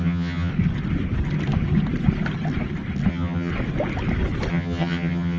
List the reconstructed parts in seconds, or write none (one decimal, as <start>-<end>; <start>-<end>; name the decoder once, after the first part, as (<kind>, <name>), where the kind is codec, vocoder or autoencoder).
0.0-0.5 (vocoder, HiFi-GAN); 3.1-3.5; 4.5-5.4